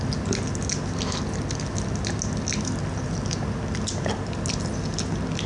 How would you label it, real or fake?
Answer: real